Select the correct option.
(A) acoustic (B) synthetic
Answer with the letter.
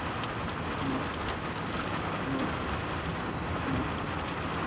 A